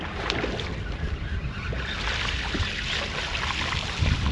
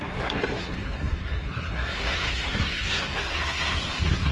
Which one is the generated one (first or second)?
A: second